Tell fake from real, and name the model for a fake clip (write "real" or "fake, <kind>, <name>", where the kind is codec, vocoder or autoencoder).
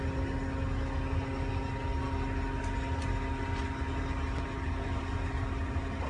real